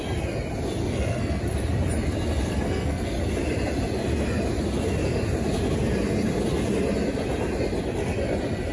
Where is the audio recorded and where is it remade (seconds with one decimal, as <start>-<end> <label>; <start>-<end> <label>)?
0.0-0.8 recorded; 0.8-1.4 remade; 1.4-2.5 recorded; 2.5-3.2 remade; 3.2-8.7 recorded